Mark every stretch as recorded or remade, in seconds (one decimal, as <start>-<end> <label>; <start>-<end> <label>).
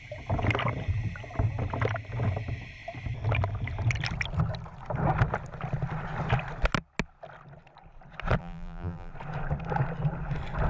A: 0.0-8.4 recorded; 8.4-9.1 remade; 9.1-10.7 recorded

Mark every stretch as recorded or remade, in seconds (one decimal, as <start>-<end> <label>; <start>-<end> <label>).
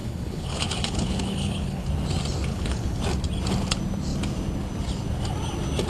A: 0.0-1.9 remade; 1.9-2.5 recorded; 2.5-3.0 remade; 3.0-5.9 recorded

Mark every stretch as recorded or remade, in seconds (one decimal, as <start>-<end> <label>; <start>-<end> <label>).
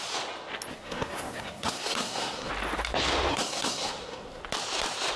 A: 0.0-0.7 recorded; 0.7-2.5 remade; 2.5-3.3 recorded; 3.3-4.4 remade; 4.4-5.2 recorded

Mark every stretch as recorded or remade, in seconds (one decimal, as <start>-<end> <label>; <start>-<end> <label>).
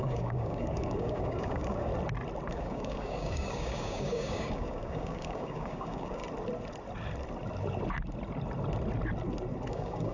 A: 0.0-1.9 remade; 1.9-2.5 recorded; 2.5-6.2 remade; 6.2-9.7 recorded; 9.7-10.1 remade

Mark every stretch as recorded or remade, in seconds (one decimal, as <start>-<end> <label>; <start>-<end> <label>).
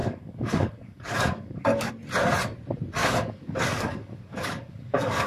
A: 0.0-1.9 remade; 1.9-3.0 recorded; 3.0-5.3 remade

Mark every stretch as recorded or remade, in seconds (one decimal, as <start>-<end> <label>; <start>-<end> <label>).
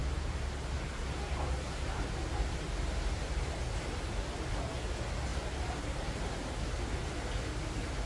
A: 0.0-4.5 remade; 4.5-5.3 recorded; 5.3-6.2 remade; 6.2-8.1 recorded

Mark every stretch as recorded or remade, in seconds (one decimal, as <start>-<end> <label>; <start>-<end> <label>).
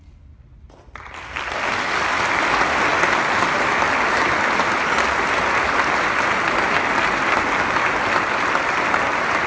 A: 0.0-9.5 recorded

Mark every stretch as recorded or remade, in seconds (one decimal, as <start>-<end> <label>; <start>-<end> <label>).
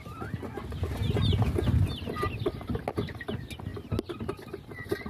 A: 0.0-5.1 recorded